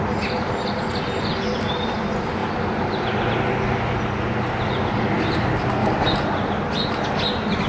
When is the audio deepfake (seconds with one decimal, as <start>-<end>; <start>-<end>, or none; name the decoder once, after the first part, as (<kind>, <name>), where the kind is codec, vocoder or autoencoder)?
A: none